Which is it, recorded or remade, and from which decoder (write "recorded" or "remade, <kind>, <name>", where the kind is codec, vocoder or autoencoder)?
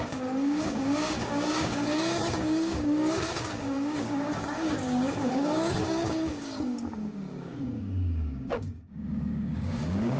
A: remade, codec, DAC